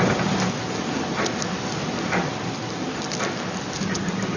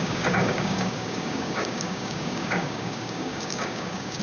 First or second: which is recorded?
first